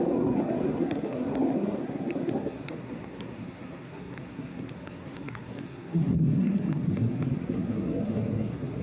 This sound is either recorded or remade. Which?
remade